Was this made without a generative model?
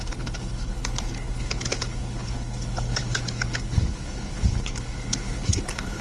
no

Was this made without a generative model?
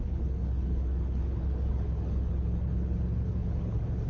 no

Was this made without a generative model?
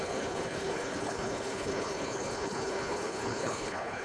no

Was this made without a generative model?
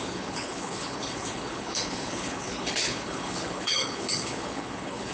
no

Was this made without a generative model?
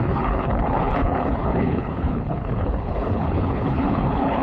no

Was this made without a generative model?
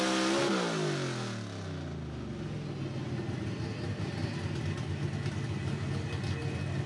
yes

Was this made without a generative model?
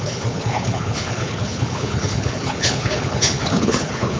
no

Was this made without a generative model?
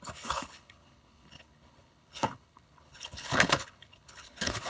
no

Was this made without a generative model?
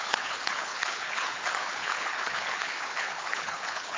no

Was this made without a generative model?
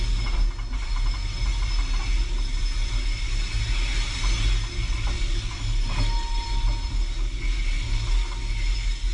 yes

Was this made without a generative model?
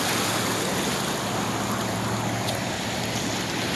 yes